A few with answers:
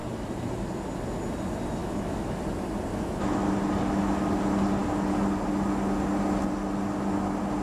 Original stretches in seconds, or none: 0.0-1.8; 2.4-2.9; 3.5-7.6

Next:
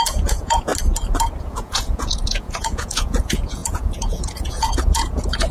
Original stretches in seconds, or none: 0.7-1.4

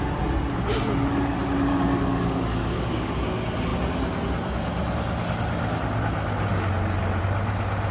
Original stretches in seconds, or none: 0.0-1.7; 3.1-7.9

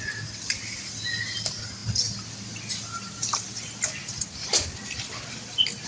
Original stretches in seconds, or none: 0.0-5.9

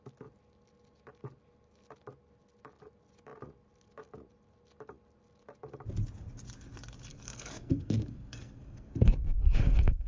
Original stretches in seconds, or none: 0.0-7.1

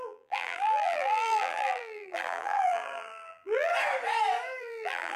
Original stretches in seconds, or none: 3.7-4.6